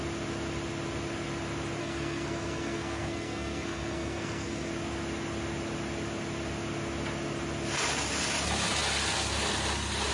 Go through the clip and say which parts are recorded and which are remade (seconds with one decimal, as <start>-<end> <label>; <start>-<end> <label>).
0.0-1.8 recorded; 1.8-4.7 remade; 4.7-10.1 recorded